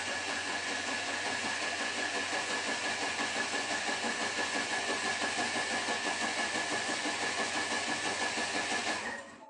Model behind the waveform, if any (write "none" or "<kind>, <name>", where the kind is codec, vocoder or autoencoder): vocoder, Vocos